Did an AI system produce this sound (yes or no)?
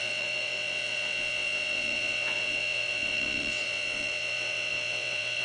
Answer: yes